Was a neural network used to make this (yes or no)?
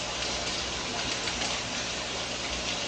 no